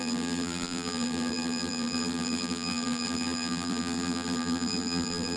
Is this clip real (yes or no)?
no